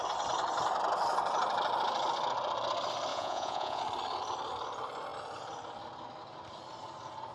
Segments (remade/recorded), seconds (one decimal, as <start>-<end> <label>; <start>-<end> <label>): 0.0-3.1 recorded; 3.1-3.8 remade; 3.8-7.3 recorded